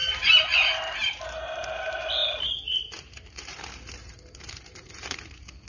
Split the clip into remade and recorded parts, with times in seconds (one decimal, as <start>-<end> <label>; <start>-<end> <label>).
0.0-1.0 recorded; 1.0-1.7 remade; 1.7-2.2 recorded; 2.2-5.3 remade; 5.3-5.7 recorded

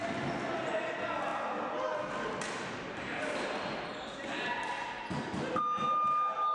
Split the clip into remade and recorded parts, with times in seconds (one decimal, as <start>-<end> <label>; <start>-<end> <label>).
0.0-6.5 recorded

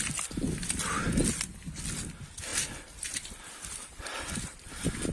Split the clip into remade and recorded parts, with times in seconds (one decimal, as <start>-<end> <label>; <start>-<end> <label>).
0.0-5.1 recorded

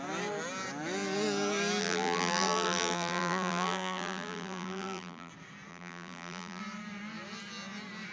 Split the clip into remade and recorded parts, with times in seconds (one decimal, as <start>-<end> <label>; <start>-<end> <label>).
0.0-1.8 recorded; 1.8-5.3 remade; 5.3-5.7 recorded; 5.7-6.6 remade; 6.6-8.1 recorded

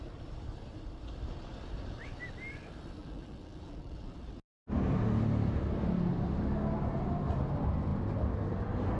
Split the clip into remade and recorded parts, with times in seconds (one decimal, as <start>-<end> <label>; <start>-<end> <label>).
0.0-3.0 recorded; 3.0-4.3 remade; 4.3-9.0 recorded

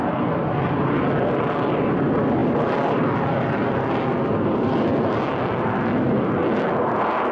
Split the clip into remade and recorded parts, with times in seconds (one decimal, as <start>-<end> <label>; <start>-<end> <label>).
0.0-2.4 recorded; 2.4-4.7 remade; 4.7-7.3 recorded

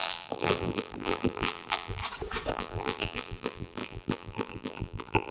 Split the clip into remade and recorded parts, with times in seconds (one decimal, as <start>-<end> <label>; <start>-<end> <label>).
0.0-2.0 remade; 2.0-2.5 recorded; 2.5-5.3 remade